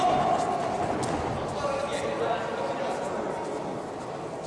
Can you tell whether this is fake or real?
real